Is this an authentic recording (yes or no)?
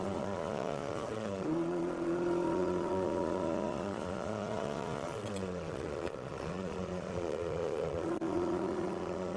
no